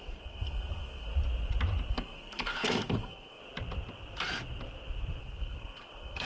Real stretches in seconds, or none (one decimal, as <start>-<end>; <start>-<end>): 1.1-1.9; 3.4-5.2